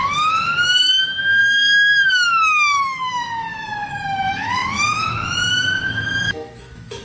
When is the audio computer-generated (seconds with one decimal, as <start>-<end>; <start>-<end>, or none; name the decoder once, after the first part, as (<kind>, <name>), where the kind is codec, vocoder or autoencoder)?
0.0-7.0 (autoencoder, DAC-VAE)